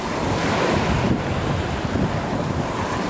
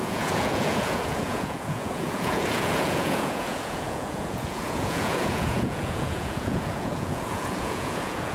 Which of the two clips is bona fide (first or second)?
first